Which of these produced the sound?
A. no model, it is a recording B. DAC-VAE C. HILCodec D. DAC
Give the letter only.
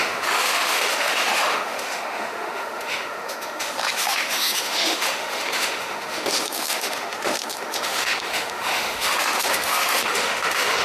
B